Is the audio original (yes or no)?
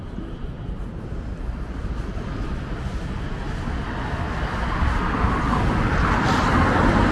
yes